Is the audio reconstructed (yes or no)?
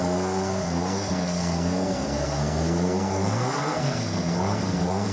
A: yes